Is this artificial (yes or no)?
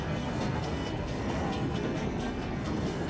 yes